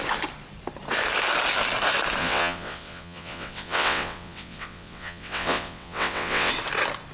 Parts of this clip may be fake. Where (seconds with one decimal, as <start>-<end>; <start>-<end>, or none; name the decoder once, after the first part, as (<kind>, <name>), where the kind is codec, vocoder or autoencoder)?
2.2-6.5 (vocoder, WaveNeXt)